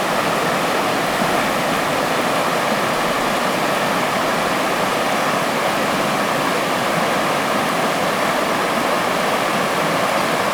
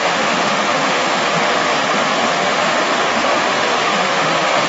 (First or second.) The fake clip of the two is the second